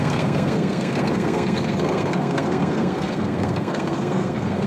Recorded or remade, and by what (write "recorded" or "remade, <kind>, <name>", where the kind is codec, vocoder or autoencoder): remade, codec, SNAC